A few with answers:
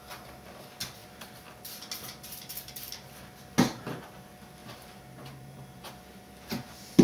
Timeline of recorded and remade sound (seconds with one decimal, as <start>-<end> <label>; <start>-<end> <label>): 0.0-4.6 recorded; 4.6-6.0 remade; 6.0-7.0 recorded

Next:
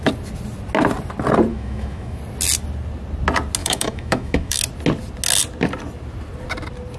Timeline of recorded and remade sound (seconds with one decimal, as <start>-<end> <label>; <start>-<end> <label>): 0.0-1.5 recorded; 1.5-2.2 remade; 2.2-3.6 recorded; 3.6-4.6 remade; 4.6-7.0 recorded

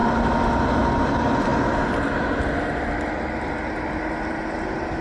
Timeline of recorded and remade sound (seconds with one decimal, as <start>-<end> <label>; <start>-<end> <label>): 0.0-5.0 recorded

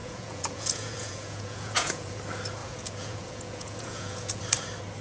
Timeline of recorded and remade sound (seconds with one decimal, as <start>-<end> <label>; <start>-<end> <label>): 0.0-2.2 remade; 2.2-2.6 recorded; 2.6-4.4 remade; 4.4-5.0 recorded

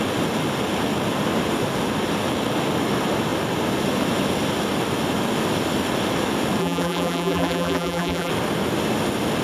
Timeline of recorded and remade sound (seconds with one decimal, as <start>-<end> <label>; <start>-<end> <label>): 0.0-6.6 recorded; 6.6-8.3 remade; 8.3-9.4 recorded